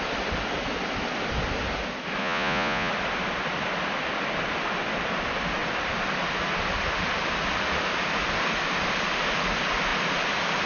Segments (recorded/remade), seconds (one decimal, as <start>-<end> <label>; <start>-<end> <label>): 0.0-2.2 recorded; 2.2-2.9 remade; 2.9-10.7 recorded